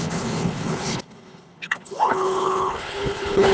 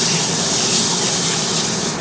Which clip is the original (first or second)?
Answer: second